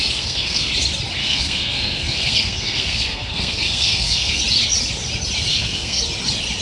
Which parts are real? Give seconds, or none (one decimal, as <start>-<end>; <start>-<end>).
0.7-1.2; 4.4-5.5; 6.0-6.6